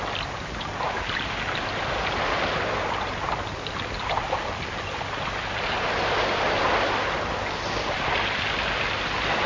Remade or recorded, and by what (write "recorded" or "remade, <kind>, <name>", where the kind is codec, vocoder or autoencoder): recorded